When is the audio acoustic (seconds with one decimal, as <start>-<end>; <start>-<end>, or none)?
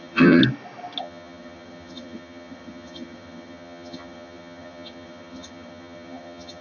0.4-1.0